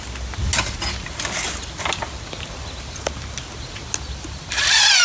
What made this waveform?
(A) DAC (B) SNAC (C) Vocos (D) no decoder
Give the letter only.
D